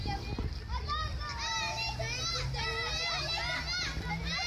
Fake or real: real